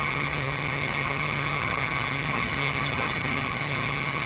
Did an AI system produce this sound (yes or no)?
yes